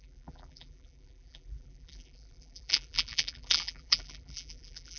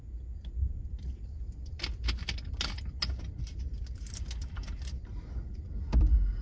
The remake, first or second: first